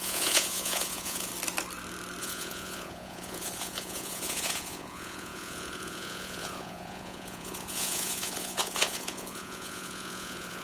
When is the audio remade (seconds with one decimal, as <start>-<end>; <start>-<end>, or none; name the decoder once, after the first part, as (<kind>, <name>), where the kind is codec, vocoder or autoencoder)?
0.0-1.3 (vocoder, Vocos); 2.2-10.6